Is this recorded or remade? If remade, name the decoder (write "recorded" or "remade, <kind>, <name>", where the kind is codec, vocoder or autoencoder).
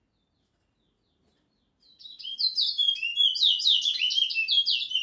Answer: recorded